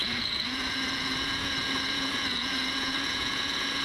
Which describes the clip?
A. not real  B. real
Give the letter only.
A